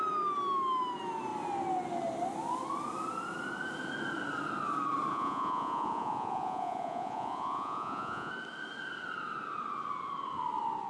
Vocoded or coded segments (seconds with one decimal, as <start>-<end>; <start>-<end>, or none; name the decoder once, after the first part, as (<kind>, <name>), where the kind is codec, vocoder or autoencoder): 5.1-8.3 (vocoder, Vocos)